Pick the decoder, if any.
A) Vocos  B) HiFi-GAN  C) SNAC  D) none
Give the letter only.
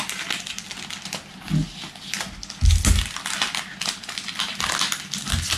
D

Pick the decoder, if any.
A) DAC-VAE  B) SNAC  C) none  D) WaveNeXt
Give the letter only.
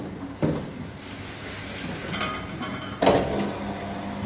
C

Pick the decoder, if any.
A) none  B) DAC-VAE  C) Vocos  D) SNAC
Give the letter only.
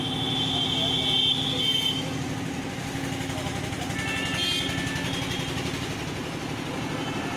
A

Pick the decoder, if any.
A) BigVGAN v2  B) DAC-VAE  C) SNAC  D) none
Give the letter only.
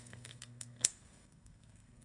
C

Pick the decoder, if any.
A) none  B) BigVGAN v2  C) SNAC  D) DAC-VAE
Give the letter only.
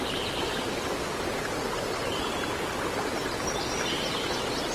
A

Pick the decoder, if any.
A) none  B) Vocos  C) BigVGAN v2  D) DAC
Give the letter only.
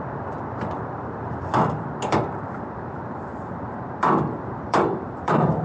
C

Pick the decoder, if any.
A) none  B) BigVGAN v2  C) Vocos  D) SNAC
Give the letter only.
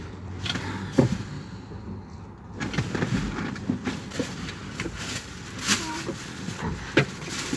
A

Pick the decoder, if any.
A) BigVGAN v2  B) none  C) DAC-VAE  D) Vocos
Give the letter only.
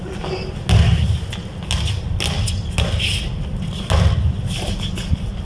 B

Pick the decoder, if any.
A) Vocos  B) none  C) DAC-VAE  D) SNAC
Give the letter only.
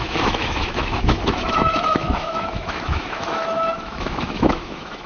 C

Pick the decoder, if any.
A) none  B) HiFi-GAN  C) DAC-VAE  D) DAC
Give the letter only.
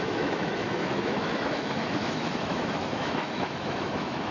C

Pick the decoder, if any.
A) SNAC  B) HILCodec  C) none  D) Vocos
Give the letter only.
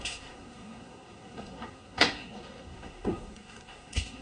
A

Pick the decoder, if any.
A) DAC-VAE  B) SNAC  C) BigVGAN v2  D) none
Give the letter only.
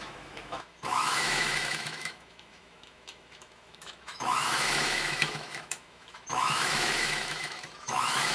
A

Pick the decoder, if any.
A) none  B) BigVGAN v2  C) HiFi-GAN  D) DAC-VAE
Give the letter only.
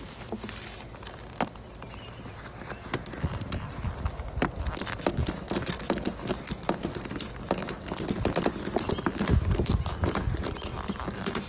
A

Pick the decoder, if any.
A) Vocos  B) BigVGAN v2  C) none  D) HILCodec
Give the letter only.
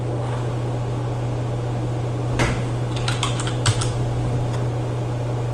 C